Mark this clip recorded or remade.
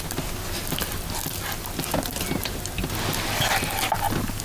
recorded